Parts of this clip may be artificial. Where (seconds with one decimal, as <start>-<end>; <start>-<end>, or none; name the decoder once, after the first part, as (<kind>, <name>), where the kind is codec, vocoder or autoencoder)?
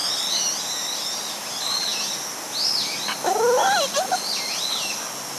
none